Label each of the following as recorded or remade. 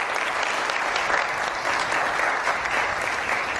recorded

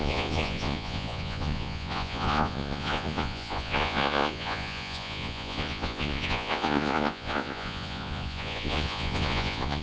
remade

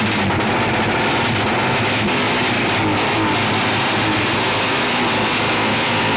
recorded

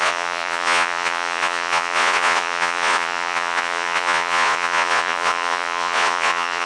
remade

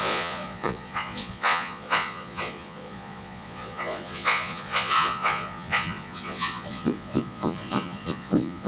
remade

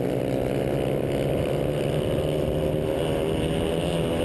recorded